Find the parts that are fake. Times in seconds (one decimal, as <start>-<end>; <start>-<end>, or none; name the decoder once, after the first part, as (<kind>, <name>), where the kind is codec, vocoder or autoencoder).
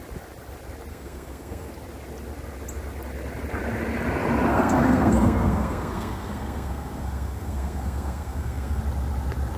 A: 0.9-1.7 (codec, SNAC); 4.5-8.8